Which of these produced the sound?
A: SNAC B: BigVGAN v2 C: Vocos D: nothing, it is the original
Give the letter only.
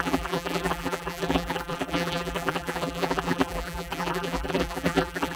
B